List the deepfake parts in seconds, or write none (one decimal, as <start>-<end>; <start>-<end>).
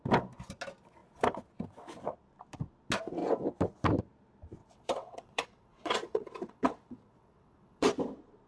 4.6-7.9